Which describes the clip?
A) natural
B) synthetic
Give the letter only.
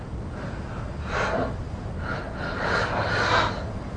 A